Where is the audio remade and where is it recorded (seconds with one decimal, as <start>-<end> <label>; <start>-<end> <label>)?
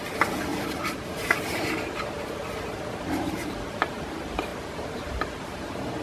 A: 0.0-0.5 recorded; 0.5-4.1 remade; 4.1-4.5 recorded; 4.5-5.6 remade; 5.6-6.0 recorded